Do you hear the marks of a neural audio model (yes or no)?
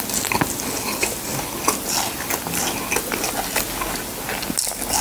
no